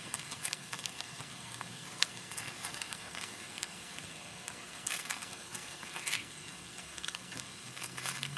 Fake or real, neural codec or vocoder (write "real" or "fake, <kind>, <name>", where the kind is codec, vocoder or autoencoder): fake, codec, SNAC